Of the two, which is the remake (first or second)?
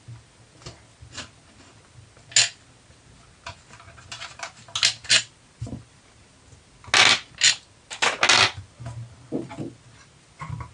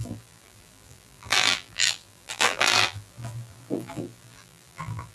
second